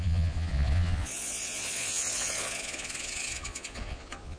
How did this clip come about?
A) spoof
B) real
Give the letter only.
A